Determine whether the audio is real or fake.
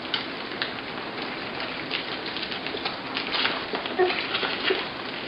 real